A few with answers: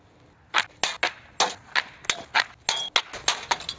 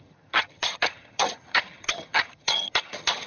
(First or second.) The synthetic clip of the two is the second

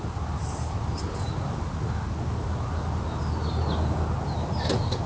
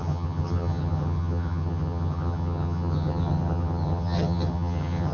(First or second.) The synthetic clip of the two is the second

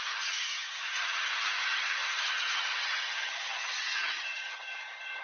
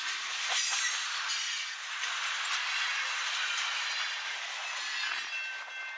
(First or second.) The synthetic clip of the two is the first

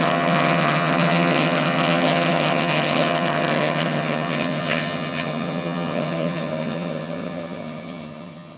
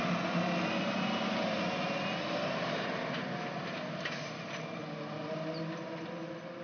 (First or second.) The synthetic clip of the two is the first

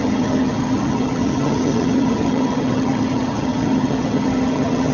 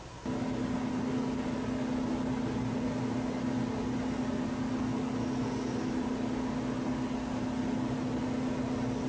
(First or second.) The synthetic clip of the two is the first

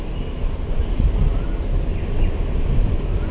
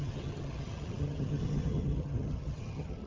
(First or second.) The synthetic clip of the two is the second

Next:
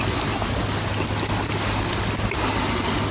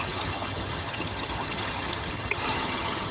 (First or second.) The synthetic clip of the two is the second